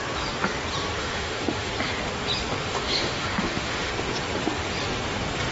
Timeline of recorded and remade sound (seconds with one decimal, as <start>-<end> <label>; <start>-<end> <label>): 0.0-1.0 recorded; 1.0-1.7 remade; 1.7-2.6 recorded; 2.6-3.9 remade; 3.9-5.5 recorded